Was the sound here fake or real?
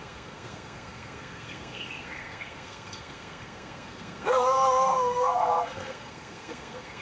fake